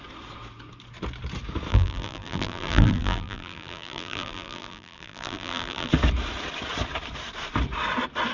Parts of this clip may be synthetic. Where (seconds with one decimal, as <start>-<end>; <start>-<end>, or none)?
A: 1.7-5.9